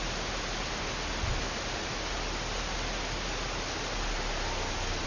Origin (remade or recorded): recorded